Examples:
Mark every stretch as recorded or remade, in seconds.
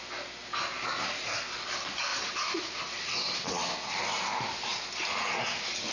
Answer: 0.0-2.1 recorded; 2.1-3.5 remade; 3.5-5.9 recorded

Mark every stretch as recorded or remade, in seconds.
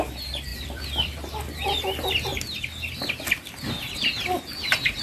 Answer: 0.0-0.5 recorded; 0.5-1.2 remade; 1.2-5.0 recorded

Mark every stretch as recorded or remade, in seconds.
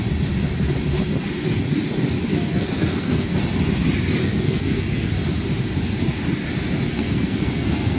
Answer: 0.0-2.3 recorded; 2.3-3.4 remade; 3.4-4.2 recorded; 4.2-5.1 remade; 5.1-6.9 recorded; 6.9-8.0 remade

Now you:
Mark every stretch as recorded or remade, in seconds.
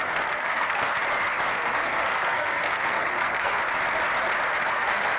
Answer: 0.0-0.9 remade; 0.9-1.5 recorded; 1.5-3.6 remade; 3.6-4.7 recorded; 4.7-5.2 remade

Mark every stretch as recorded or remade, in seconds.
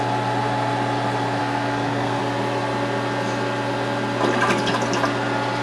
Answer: 0.0-1.4 recorded; 1.4-2.2 remade; 2.2-5.6 recorded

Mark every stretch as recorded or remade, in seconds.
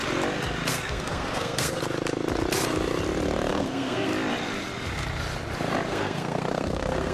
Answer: 0.0-0.7 recorded; 0.7-1.8 remade; 1.8-3.5 recorded; 3.5-4.1 remade; 4.1-5.9 recorded; 5.9-7.1 remade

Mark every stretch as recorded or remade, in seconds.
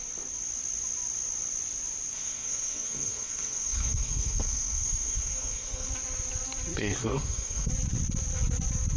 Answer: 0.0-2.1 recorded; 2.1-5.9 remade; 5.9-7.0 recorded; 7.0-7.7 remade; 7.7-9.0 recorded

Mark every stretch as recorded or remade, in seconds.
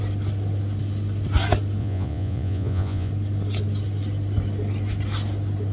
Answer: 0.0-1.8 recorded; 1.8-3.1 remade; 3.1-5.7 recorded